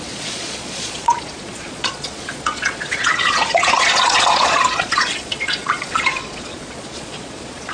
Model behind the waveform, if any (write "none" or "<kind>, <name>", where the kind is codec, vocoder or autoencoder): vocoder, Vocos